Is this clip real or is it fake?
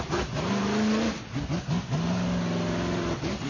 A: real